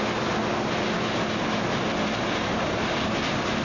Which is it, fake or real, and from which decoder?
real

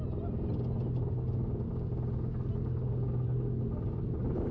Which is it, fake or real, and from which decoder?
real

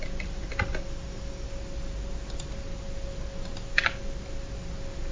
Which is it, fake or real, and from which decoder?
real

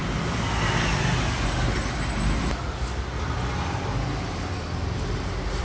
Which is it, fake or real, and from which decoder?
real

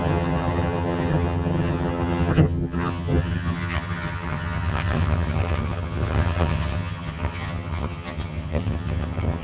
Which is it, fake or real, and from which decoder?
fake, vocoder, HiFi-GAN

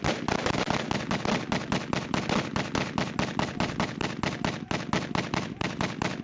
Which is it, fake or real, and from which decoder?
real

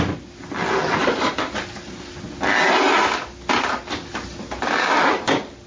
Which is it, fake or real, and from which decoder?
real